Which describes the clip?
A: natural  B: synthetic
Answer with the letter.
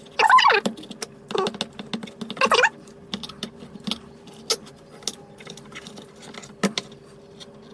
A